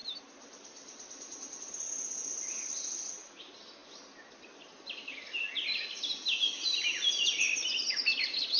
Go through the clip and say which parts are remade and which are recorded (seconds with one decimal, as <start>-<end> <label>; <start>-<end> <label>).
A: 0.0-8.6 recorded